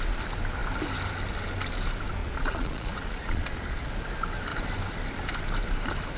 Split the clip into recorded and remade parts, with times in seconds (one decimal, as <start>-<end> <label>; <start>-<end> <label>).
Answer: 0.0-2.2 recorded; 2.2-3.9 remade; 3.9-6.2 recorded